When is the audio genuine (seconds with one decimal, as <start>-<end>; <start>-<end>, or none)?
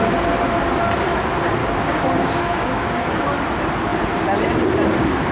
0.0-1.6; 3.2-5.3